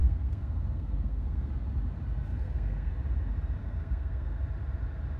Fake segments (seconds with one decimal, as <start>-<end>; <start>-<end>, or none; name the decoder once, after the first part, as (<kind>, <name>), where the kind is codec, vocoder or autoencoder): 0.0-1.5 (codec, SNAC); 2.3-2.9; 3.6-4.4